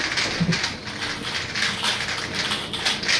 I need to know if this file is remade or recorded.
recorded